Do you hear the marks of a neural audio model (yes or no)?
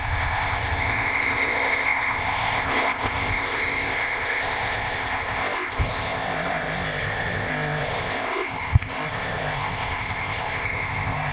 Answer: yes